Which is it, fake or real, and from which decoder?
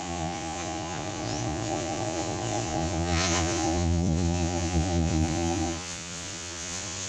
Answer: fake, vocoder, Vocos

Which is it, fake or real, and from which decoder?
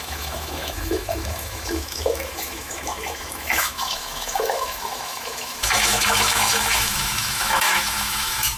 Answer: fake, autoencoder, DAC-VAE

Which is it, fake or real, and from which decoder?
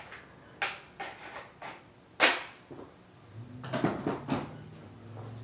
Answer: real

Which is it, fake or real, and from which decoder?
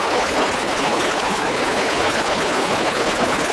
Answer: fake, codec, HILCodec